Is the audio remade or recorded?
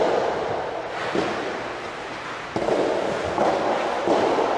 recorded